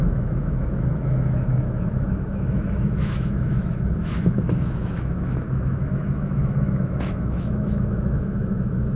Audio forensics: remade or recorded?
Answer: remade